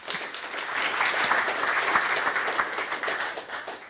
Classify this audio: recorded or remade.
recorded